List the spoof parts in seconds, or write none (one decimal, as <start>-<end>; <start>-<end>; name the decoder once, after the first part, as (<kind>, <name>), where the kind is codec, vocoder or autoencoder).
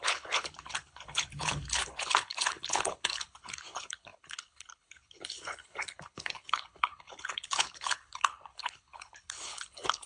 0.0-10.1 (codec, HILCodec)